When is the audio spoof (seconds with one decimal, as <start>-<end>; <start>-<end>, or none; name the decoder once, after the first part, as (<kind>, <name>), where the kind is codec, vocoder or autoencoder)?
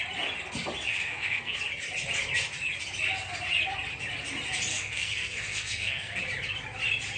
0.9-1.6 (codec, SNAC); 4.7-6.2